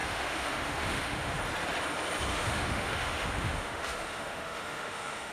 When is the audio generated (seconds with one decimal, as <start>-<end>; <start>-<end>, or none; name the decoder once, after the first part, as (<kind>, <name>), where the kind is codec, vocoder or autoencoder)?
0.0-1.4 (autoencoder, DAC-VAE); 2.3-5.3